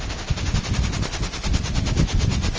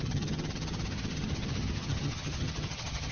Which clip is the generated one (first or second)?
second